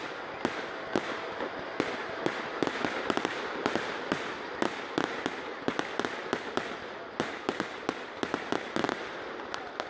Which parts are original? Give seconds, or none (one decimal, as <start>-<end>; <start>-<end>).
0.0-9.9